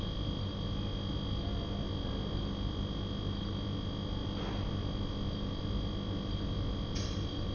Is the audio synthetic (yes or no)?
no